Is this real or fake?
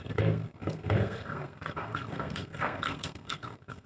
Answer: fake